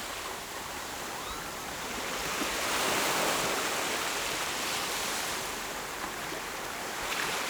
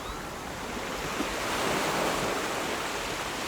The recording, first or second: second